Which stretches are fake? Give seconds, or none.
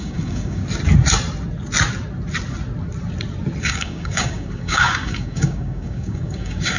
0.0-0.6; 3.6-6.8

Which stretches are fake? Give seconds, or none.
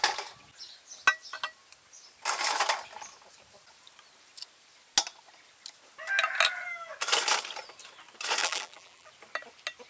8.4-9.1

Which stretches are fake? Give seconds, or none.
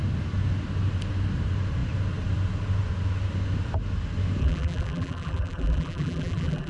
4.4-6.7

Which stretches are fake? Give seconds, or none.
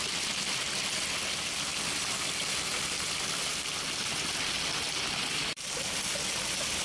none